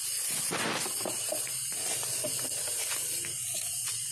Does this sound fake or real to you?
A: real